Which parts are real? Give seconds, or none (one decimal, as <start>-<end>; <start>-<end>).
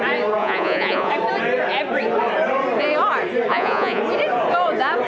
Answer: 0.0-0.4; 1.1-3.5; 4.0-5.1